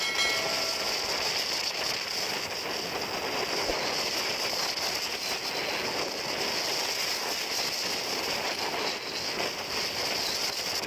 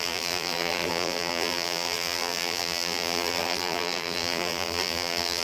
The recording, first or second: first